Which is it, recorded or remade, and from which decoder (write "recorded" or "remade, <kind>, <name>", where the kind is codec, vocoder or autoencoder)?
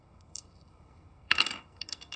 remade, codec, SNAC